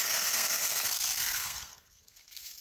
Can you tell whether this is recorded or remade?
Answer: remade